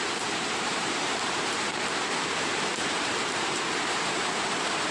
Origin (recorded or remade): remade